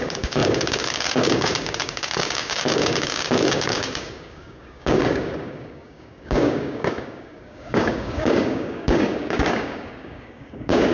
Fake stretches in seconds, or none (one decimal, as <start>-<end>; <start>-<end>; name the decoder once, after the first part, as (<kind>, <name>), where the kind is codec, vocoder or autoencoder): 0.0-10.9 (codec, DAC)